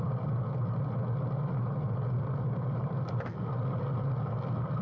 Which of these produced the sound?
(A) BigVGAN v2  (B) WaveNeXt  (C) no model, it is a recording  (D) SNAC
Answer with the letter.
C